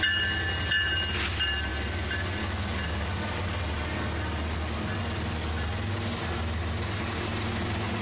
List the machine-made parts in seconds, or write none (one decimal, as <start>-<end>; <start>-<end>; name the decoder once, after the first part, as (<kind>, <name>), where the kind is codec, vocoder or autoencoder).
none